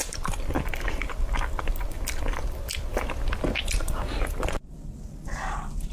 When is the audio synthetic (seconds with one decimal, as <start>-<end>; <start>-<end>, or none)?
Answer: 0.0-2.9; 3.8-5.9